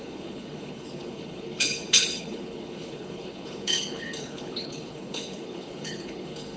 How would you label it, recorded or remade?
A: remade